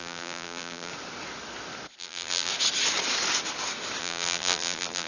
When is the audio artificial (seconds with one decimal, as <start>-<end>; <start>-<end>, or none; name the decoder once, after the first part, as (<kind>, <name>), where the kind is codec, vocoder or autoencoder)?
0.0-0.9 (vocoder, BigVGAN v2); 2.0-2.5; 4.0-5.1